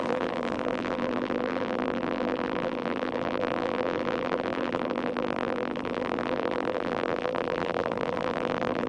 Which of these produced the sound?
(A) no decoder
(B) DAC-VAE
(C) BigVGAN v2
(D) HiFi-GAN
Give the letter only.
C